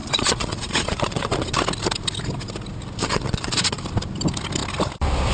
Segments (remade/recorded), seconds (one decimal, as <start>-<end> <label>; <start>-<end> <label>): 0.0-1.6 remade; 1.6-3.0 recorded; 3.0-3.8 remade; 3.8-5.3 recorded